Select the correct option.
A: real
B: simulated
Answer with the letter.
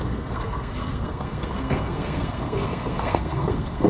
B